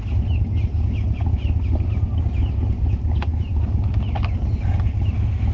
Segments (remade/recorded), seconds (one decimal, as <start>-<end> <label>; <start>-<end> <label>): 0.0-5.5 recorded